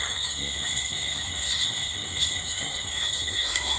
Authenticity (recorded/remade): remade